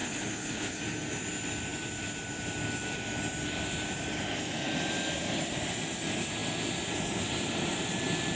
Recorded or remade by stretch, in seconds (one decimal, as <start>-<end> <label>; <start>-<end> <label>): 0.0-0.8 remade; 0.8-8.4 recorded